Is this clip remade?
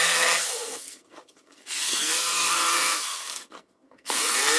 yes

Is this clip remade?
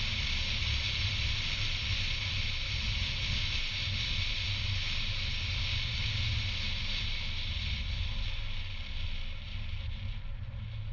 no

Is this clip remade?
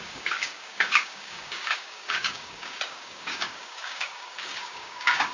yes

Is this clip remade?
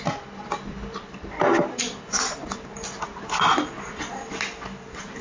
no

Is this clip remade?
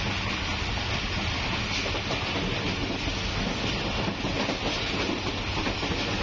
no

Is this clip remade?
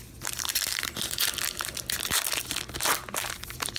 yes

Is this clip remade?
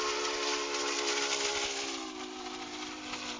no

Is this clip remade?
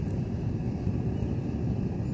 no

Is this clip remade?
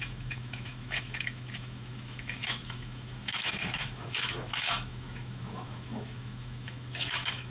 yes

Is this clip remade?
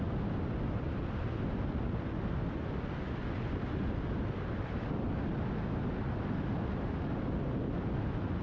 no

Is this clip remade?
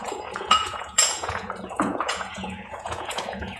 yes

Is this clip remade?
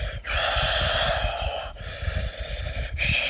no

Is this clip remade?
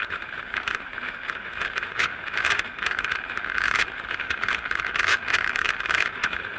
yes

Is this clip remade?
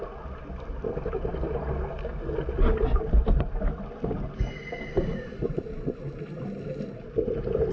no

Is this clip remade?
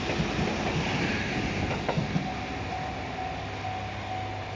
no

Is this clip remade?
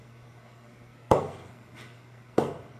yes